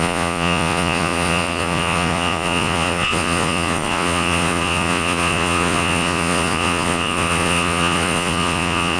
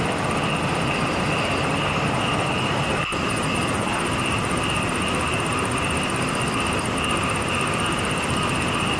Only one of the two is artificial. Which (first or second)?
first